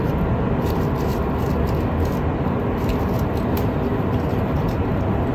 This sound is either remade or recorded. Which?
recorded